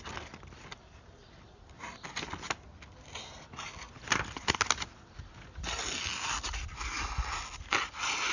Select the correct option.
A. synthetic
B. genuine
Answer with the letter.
B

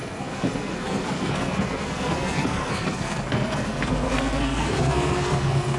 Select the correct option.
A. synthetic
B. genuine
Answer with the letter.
A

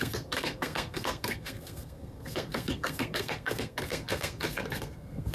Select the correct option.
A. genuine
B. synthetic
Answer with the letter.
B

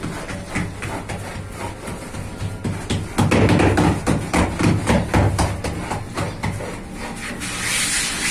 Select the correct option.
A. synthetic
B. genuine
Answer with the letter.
B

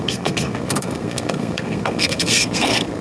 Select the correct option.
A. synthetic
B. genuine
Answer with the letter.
A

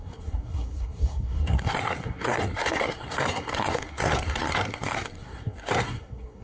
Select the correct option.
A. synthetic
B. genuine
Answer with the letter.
A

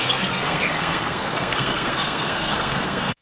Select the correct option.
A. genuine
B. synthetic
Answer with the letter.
B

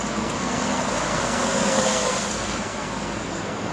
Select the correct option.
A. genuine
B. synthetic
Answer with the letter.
B